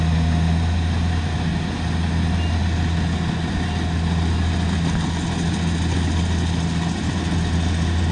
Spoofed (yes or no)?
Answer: no